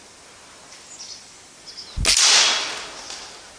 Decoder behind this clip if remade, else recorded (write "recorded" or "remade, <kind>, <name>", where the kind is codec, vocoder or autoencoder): recorded